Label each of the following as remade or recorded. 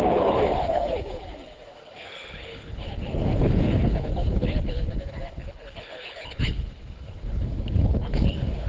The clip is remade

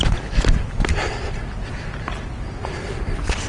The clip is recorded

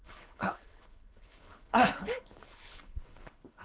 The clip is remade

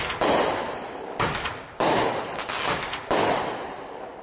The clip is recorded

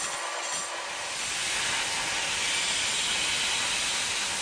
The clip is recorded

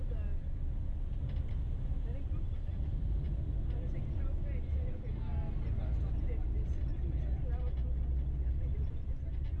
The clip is recorded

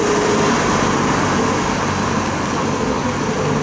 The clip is recorded